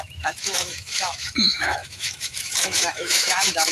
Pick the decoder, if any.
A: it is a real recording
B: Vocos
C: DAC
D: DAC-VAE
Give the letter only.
D